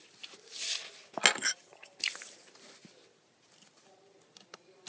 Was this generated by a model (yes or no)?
no